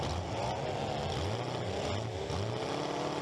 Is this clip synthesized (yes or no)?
no